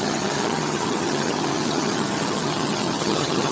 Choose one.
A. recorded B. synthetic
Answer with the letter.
B